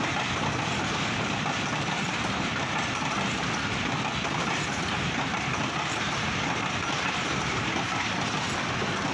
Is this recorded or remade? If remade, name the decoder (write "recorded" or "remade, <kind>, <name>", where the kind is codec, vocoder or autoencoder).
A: recorded